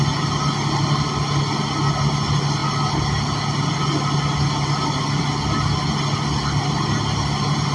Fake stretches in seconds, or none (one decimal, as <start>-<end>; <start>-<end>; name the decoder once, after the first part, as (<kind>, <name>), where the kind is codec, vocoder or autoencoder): none